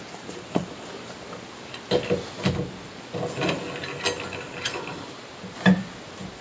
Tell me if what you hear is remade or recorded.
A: recorded